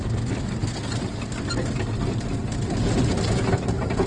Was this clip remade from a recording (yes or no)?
no